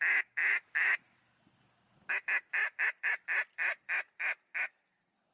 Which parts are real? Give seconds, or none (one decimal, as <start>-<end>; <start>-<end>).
0.0-0.5; 1.2-2.6